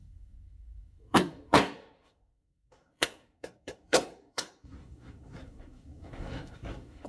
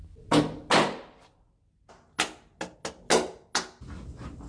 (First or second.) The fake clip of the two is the first